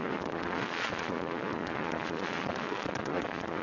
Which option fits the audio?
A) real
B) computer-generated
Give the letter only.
B